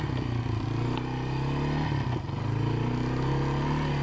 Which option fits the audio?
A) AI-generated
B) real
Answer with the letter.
B